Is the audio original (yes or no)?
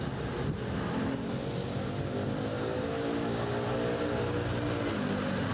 yes